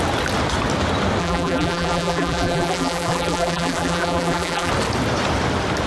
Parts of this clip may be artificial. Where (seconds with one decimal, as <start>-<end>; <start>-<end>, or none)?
1.2-4.7